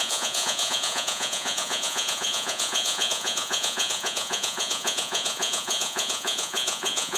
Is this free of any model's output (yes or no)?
no